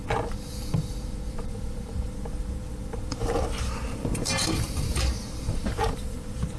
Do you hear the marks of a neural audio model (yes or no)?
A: yes